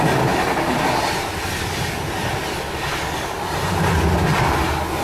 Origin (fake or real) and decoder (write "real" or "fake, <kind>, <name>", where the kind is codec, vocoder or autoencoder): real